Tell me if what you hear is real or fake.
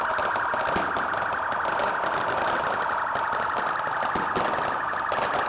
real